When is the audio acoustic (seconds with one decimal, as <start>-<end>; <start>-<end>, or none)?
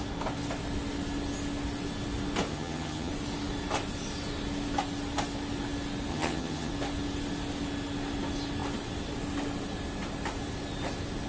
0.0-2.5; 3.1-6.1; 6.7-11.3